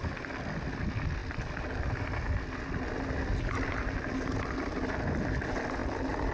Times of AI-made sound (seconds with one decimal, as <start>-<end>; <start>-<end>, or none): none